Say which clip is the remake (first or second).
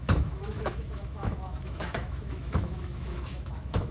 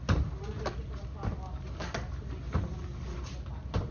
first